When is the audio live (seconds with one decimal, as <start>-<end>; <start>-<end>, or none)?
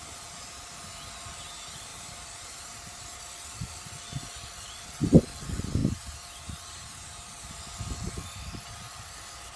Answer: 0.0-1.9; 3.2-5.8; 7.5-9.6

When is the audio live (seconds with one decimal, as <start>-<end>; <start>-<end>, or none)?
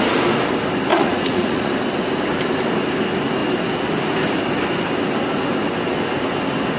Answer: 0.0-0.9; 1.7-6.8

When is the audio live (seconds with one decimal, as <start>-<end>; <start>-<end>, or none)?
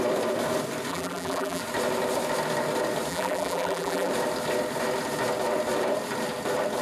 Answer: 0.0-0.9; 1.6-3.1; 4.1-6.8